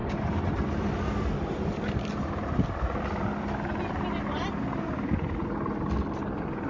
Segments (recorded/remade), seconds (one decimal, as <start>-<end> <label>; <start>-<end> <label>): 0.0-6.7 recorded